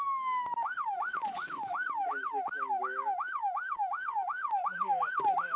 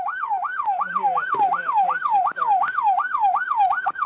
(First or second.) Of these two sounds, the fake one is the first